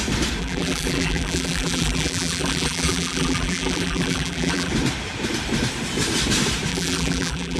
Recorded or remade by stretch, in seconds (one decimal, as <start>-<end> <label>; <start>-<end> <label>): 0.0-0.4 recorded; 0.4-4.7 remade; 4.7-6.7 recorded; 6.7-7.6 remade